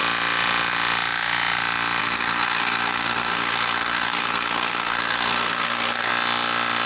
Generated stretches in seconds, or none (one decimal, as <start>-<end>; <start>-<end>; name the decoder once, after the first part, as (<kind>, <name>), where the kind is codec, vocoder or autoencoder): 2.0-6.1 (codec, SNAC)